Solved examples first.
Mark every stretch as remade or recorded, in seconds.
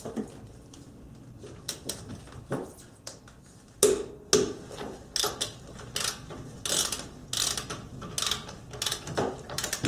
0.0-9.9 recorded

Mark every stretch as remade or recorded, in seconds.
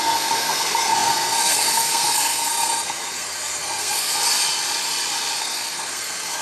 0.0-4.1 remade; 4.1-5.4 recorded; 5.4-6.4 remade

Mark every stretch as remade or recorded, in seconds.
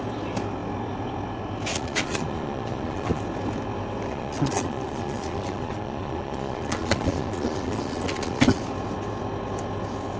0.0-1.7 recorded; 1.7-3.2 remade; 3.2-4.1 recorded; 4.1-8.6 remade; 8.6-10.2 recorded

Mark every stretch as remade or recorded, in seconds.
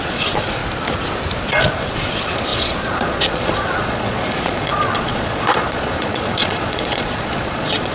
0.0-0.6 remade; 0.6-1.7 recorded; 1.7-7.9 remade